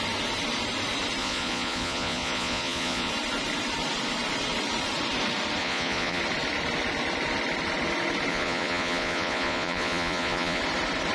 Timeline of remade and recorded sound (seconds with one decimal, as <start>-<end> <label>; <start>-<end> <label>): 0.0-1.2 recorded; 1.2-3.1 remade; 3.1-5.6 recorded; 5.6-6.2 remade; 6.2-8.3 recorded; 8.3-10.6 remade; 10.6-11.1 recorded